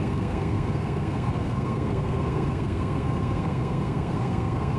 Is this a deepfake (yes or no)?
yes